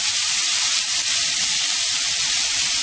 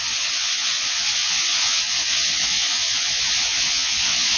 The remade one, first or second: second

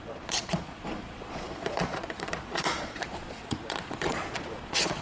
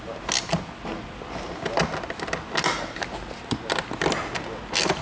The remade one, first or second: first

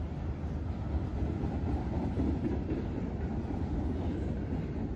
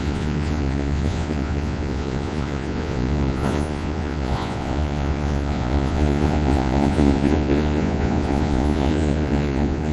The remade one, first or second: second